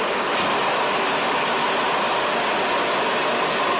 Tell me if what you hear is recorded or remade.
recorded